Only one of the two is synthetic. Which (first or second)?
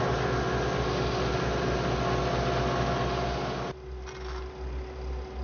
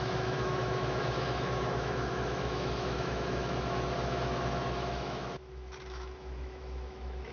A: second